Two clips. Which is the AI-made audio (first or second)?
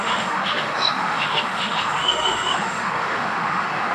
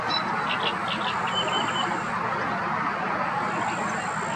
first